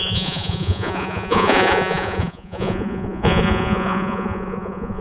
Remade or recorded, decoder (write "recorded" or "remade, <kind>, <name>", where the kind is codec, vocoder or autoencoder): remade, vocoder, Vocos